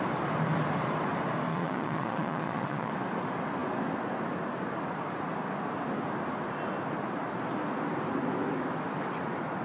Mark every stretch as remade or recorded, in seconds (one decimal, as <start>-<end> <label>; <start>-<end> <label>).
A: 0.0-1.5 recorded; 1.5-2.9 remade; 2.9-9.6 recorded